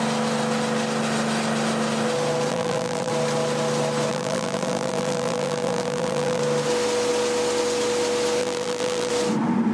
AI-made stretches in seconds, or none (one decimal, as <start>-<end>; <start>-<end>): 2.5-3.1; 4.1-6.4; 8.4-9.1